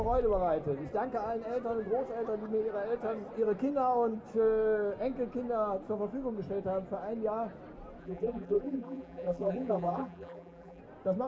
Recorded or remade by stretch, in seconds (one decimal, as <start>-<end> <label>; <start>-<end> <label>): 0.0-8.0 recorded; 8.0-10.8 remade; 10.8-11.3 recorded